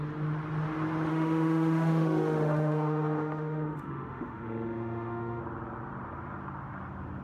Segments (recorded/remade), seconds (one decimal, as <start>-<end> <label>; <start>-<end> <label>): 0.0-1.1 recorded; 1.1-5.4 remade; 5.4-7.2 recorded